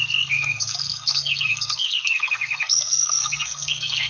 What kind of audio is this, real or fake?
fake